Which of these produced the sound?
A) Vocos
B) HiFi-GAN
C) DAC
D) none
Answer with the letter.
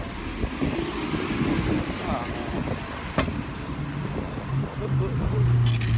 D